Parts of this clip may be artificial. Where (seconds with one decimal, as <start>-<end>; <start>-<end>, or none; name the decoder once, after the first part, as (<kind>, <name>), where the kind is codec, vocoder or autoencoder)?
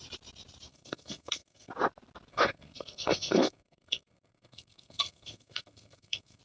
0.7-1.7 (codec, SNAC); 2.3-6.4